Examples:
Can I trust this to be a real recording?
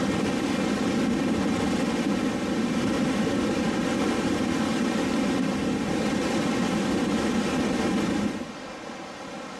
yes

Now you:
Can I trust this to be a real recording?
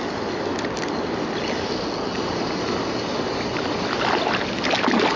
yes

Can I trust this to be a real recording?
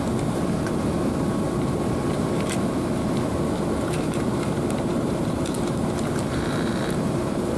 no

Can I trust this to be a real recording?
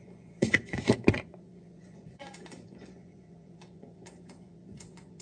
no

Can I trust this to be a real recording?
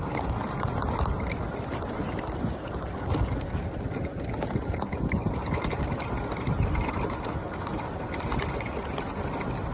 yes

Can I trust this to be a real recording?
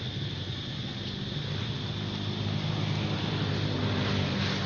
yes